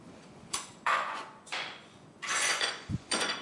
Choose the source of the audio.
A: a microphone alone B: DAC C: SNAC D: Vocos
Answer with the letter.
D